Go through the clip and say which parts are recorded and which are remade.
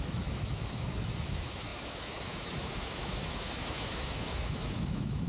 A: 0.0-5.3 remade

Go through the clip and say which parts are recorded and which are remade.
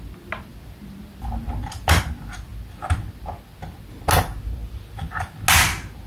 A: 0.0-6.1 recorded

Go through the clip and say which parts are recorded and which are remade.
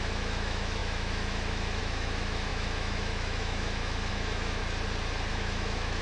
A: 0.0-4.6 remade; 4.6-5.3 recorded; 5.3-6.0 remade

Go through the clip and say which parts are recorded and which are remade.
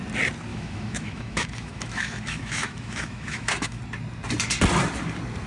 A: 0.0-0.5 recorded; 0.5-3.8 remade; 3.8-5.5 recorded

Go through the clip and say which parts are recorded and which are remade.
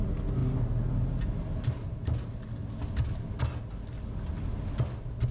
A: 0.0-5.3 recorded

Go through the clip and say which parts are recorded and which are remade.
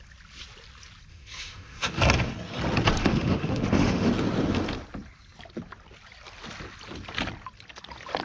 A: 0.0-1.1 recorded; 1.1-2.0 remade; 2.0-3.0 recorded; 3.0-4.1 remade; 4.1-8.2 recorded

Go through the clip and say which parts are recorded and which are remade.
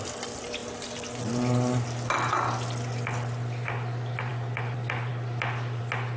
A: 0.0-6.2 recorded